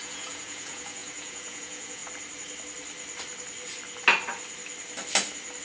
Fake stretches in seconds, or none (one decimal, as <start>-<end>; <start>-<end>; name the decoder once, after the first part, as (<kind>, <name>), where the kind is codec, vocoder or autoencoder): 0.0-2.0 (vocoder, Vocos)